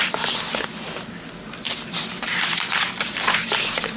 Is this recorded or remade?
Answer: remade